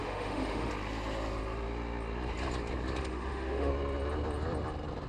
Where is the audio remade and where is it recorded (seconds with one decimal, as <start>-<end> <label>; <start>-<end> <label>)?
0.0-0.7 remade; 0.7-3.0 recorded; 3.0-3.7 remade; 3.7-5.1 recorded